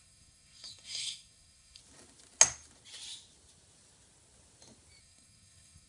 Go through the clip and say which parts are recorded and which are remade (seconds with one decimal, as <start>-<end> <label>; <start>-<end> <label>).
0.0-1.8 remade; 1.8-5.0 recorded; 5.0-5.9 remade